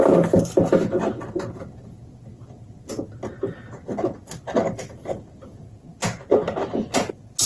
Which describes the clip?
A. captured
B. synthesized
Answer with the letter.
A